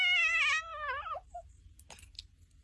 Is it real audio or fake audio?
real